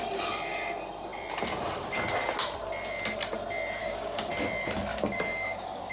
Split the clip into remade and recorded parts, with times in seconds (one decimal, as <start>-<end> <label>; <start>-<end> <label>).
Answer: 0.0-3.8 recorded; 3.8-4.3 remade; 4.3-4.9 recorded; 4.9-5.9 remade